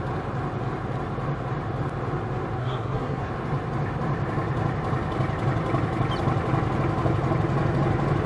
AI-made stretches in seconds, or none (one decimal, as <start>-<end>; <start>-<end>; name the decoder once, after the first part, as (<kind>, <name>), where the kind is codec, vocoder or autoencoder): 2.6-3.3 (codec, SNAC)